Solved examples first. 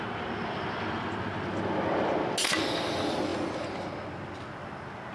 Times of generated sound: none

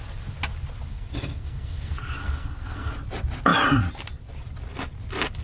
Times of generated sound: 0.9-2.9